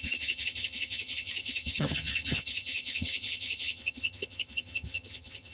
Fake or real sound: fake